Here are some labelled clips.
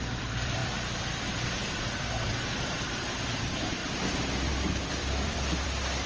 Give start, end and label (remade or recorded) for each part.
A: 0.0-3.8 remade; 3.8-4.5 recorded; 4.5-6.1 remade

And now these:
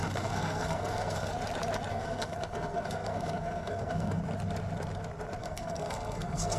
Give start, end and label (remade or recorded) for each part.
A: 0.0-1.3 remade; 1.3-1.9 recorded; 1.9-4.2 remade; 4.2-5.4 recorded; 5.4-6.6 remade